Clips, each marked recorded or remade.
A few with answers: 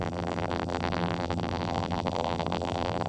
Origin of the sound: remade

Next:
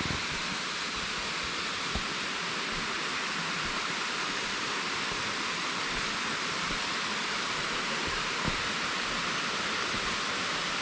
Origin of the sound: recorded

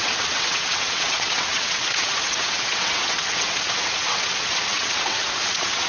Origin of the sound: remade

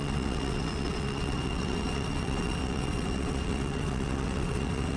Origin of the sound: remade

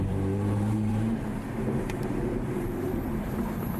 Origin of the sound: remade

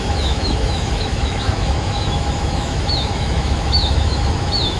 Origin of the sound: remade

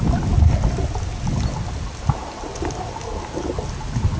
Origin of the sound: recorded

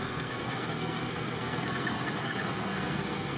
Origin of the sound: remade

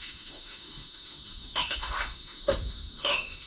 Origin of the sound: remade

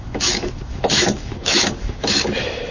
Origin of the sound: remade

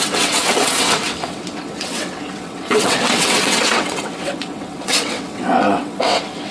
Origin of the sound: remade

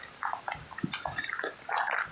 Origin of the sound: recorded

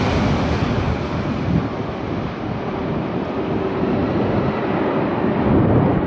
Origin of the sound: recorded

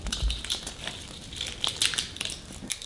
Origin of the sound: recorded